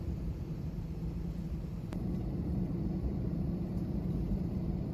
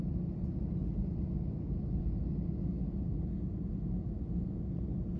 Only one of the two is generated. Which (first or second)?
first